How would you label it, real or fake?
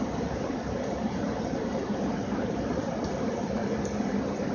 fake